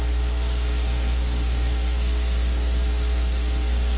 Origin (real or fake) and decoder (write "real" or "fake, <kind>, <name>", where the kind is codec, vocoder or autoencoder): fake, codec, SNAC